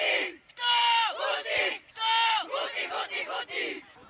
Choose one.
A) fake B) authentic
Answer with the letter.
B